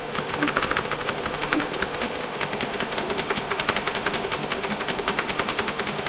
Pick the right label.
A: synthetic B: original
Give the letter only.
A